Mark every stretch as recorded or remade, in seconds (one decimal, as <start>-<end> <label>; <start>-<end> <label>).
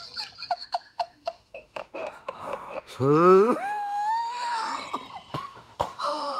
0.0-0.5 recorded; 0.5-4.7 remade; 4.7-5.3 recorded; 5.3-6.4 remade